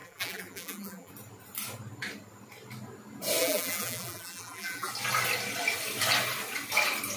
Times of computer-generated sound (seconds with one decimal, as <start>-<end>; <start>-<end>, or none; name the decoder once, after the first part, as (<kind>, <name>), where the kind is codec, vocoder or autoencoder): 0.0-1.1 (vocoder, BigVGAN v2); 3.4-4.9